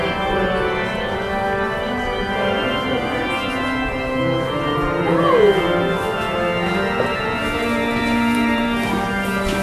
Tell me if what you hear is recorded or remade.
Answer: remade